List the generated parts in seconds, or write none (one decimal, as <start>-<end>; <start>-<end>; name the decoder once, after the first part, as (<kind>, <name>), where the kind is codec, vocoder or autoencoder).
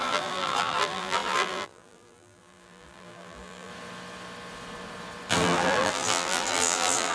0.0-3.7 (vocoder, BigVGAN v2); 5.3-7.1